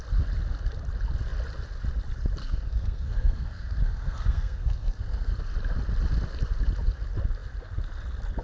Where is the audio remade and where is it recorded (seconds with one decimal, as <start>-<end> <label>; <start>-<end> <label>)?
0.0-2.4 recorded; 2.4-5.3 remade; 5.3-8.4 recorded